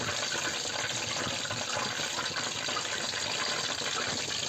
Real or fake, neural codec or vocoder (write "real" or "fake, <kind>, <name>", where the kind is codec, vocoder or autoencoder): real